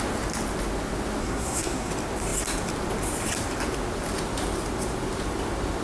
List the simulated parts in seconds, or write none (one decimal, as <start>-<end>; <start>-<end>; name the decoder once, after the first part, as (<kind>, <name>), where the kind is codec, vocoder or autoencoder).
1.2-1.9 (codec, SNAC)

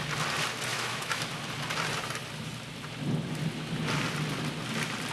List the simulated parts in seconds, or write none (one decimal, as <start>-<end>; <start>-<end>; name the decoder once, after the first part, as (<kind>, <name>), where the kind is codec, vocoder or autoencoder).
0.7-1.2 (autoencoder, DAC-VAE)

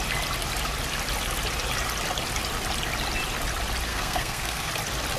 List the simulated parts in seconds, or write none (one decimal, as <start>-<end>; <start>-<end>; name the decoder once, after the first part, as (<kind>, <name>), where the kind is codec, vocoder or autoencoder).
3.9-4.7 (codec, SNAC)

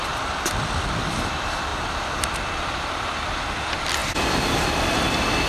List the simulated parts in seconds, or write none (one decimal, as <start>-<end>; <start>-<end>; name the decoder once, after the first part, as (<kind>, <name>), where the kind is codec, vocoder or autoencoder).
none

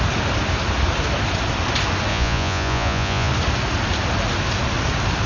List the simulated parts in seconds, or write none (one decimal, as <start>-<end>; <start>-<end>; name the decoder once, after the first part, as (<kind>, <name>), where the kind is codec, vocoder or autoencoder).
2.1-3.3 (vocoder, Vocos)